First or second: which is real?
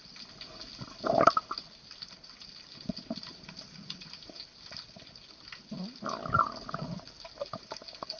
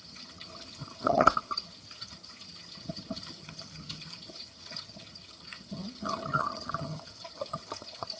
first